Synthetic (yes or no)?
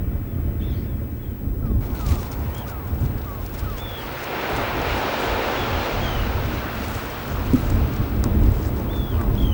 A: no